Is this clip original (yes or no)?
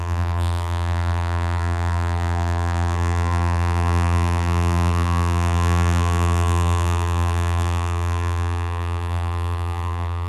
no